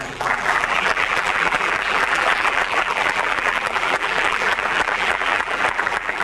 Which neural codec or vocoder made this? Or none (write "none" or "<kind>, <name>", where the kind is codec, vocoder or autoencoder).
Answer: vocoder, BigVGAN v2